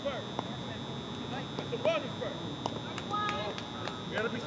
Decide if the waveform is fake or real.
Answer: real